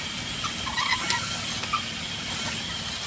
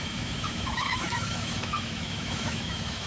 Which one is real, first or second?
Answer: first